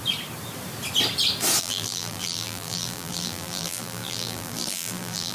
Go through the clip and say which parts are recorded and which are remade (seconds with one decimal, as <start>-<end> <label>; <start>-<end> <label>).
0.0-1.6 recorded; 1.6-5.3 remade